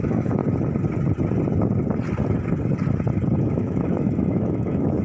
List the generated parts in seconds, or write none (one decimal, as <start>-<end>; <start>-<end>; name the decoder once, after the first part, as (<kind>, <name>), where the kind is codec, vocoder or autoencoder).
0.0-0.4 (autoencoder, DAC-VAE); 3.4-5.0